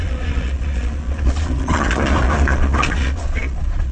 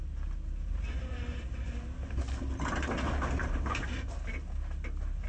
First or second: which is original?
second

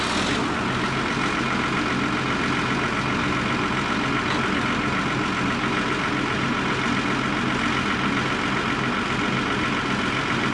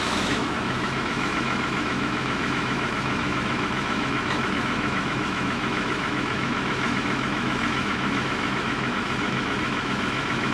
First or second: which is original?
first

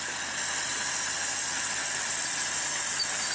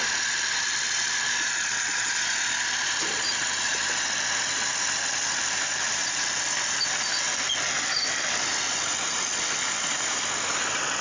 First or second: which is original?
first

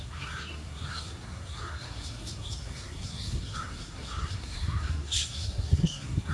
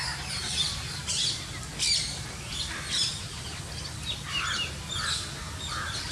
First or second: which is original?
second